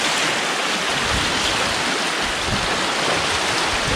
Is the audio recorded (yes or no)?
yes